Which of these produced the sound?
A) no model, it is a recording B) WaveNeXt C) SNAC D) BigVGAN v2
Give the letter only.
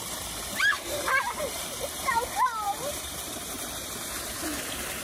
D